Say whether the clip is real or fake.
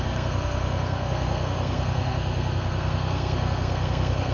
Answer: fake